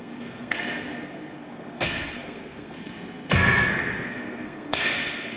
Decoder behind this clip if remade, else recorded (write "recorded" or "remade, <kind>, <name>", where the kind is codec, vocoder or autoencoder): remade, codec, SNAC